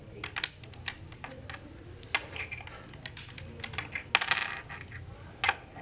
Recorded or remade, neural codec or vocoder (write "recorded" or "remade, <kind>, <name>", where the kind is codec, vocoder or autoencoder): recorded